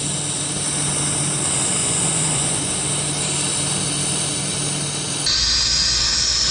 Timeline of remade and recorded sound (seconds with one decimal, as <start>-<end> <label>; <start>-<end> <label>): 0.0-1.8 recorded; 1.8-2.7 remade; 2.7-6.5 recorded